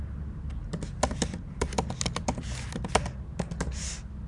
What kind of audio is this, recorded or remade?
recorded